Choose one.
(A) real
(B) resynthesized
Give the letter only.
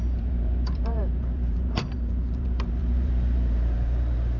B